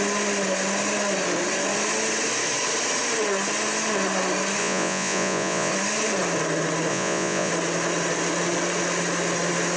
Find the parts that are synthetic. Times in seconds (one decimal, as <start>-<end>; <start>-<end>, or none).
4.6-5.7; 6.9-7.5